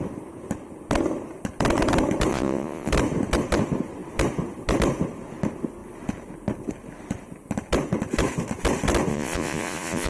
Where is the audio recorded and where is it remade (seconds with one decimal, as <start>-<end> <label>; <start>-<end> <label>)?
0.0-2.3 recorded; 2.3-2.9 remade; 2.9-9.1 recorded; 9.1-10.1 remade